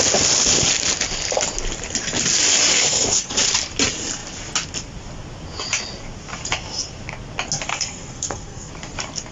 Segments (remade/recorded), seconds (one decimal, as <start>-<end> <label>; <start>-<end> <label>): 0.0-2.7 recorded; 2.7-3.5 remade; 3.5-7.7 recorded; 7.7-8.7 remade; 8.7-9.3 recorded